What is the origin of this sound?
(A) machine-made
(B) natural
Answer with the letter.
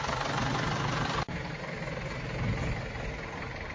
B